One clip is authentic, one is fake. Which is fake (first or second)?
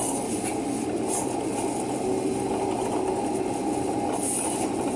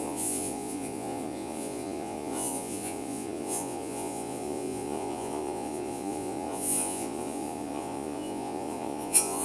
second